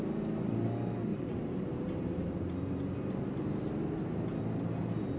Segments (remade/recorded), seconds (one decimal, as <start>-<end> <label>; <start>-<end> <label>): 0.0-1.1 recorded; 1.1-3.2 remade; 3.2-5.2 recorded